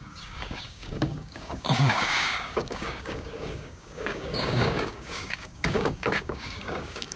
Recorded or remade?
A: remade